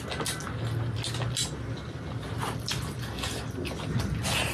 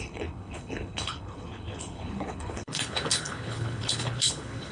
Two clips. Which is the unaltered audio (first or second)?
first